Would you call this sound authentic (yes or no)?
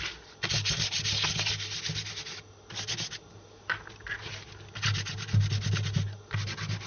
yes